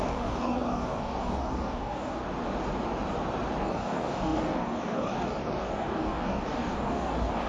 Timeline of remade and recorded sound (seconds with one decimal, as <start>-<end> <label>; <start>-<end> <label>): 0.0-2.2 remade; 2.2-3.6 recorded; 3.6-7.5 remade